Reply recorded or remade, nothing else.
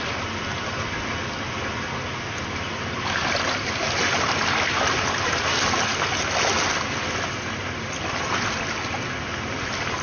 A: recorded